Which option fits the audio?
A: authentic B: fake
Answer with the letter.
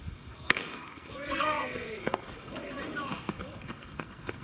B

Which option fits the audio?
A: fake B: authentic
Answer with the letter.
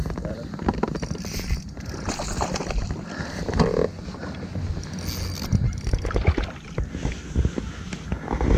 B